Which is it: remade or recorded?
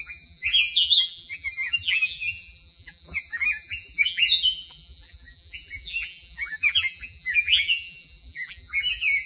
remade